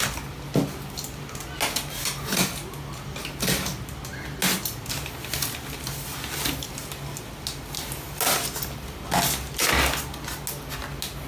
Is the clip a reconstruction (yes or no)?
no